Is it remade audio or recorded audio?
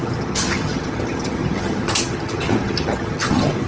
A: remade